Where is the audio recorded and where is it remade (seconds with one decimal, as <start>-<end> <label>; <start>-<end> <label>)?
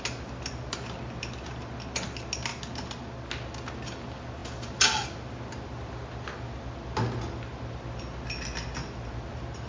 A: 0.0-9.7 recorded